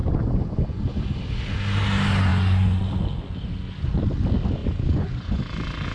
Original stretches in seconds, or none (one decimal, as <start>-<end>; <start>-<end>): 0.8-2.3; 2.9-4.6; 5.4-5.9